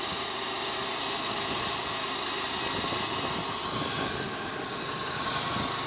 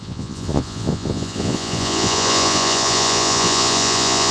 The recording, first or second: first